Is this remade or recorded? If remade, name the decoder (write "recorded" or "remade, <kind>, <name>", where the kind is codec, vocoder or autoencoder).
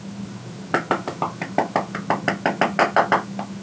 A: recorded